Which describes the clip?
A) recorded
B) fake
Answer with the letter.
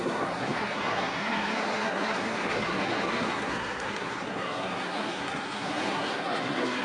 B